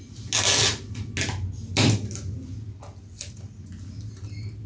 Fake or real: real